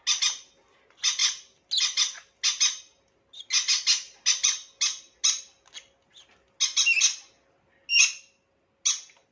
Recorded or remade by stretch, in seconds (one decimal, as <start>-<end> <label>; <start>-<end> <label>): 0.0-9.3 recorded